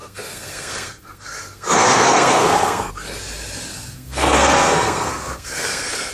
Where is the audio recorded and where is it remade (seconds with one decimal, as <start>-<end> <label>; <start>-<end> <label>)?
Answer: 0.0-2.9 remade; 2.9-3.7 recorded; 3.7-6.1 remade